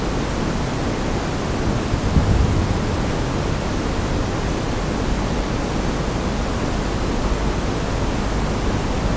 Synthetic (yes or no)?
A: no